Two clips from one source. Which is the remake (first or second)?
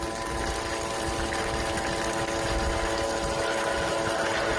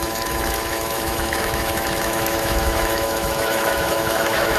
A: second